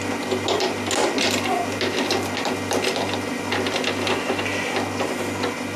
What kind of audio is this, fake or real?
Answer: real